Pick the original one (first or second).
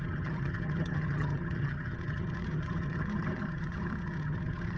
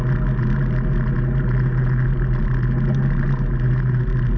second